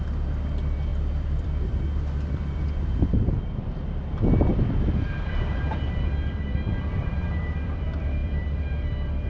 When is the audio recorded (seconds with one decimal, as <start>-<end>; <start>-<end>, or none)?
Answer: none